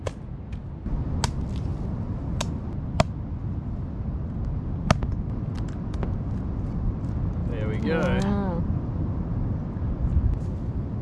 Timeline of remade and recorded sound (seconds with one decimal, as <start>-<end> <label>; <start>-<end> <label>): 0.0-11.0 recorded